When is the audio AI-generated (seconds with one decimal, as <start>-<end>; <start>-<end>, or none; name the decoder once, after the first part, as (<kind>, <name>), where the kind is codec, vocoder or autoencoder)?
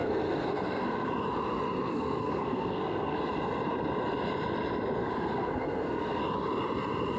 0.0-1.1 (codec, SNAC); 1.9-3.2; 5.0-6.2